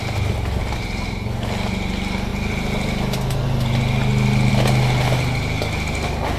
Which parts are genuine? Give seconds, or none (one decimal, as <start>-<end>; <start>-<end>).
0.0-6.4